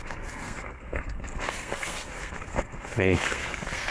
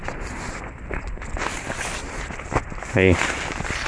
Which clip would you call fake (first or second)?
first